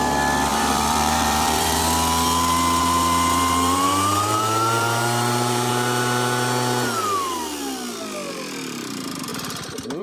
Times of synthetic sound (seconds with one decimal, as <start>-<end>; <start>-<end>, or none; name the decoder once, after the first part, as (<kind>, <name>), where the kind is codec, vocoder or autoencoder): 0.5-1.8 (vocoder, BigVGAN v2); 2.8-5.7